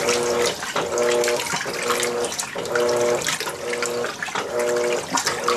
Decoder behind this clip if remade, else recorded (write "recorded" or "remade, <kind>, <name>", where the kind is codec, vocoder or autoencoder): recorded